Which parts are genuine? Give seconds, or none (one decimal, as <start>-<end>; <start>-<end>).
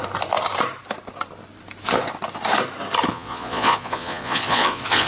0.0-3.1